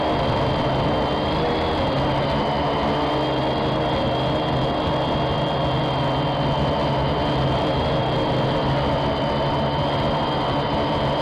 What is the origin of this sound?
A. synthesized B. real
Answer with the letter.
B